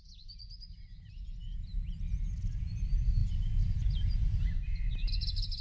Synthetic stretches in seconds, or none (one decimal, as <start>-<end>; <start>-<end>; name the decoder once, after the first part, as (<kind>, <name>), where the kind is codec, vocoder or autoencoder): 1.4-2.0 (vocoder, BigVGAN v2); 3.2-4.4